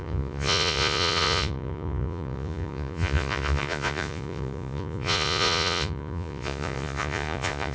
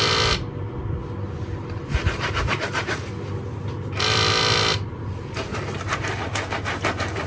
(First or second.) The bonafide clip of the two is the second